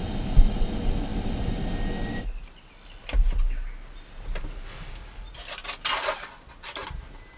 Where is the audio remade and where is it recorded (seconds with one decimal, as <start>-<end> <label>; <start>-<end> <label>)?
0.0-7.4 recorded